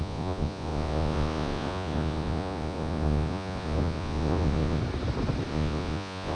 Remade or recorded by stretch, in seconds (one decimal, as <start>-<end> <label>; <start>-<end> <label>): 0.0-4.8 remade; 4.8-5.5 recorded; 5.5-6.3 remade